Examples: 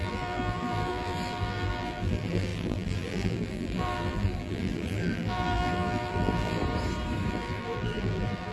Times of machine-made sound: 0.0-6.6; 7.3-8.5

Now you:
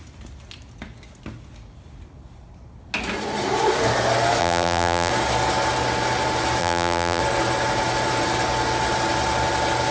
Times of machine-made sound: 4.4-5.1; 6.6-7.2